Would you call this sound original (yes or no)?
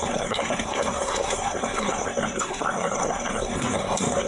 no